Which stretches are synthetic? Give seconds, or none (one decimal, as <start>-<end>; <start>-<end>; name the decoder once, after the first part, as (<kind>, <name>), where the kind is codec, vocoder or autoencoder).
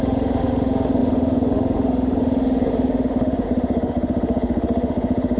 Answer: 0.0-5.4 (autoencoder, DAC-VAE)